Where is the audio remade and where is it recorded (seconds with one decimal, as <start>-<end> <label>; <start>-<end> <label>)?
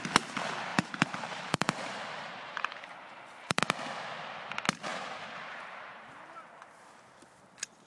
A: 0.0-0.7 recorded; 0.7-3.6 remade; 3.6-4.9 recorded; 4.9-6.2 remade; 6.2-7.9 recorded